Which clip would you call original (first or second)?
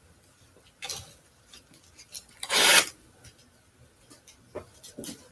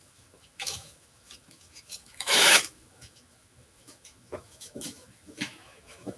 first